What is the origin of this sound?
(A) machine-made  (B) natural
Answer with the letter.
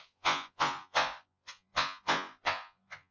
A